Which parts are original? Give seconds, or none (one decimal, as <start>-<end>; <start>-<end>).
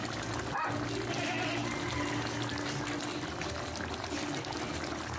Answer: 0.0-5.2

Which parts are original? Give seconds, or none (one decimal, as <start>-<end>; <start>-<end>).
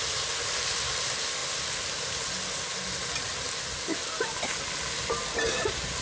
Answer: 0.0-6.0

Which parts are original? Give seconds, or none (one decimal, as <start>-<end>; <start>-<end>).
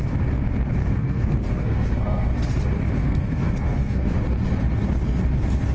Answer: 0.0-0.8; 2.3-3.0; 4.1-5.7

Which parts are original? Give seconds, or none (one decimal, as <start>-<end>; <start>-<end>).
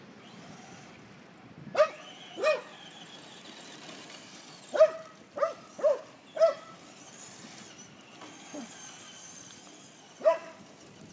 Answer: 0.0-11.1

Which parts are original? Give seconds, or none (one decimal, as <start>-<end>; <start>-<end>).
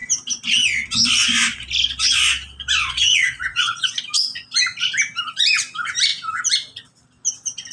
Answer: 0.0-2.8; 3.9-7.7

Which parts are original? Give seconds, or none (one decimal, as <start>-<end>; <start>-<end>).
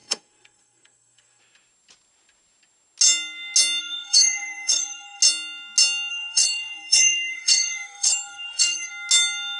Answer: 1.4-3.8; 5.2-6.1; 8.9-9.6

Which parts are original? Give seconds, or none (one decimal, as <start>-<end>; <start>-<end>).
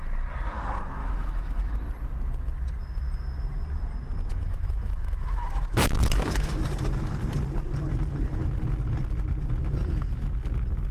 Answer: 0.0-1.0; 1.7-4.3; 6.6-10.9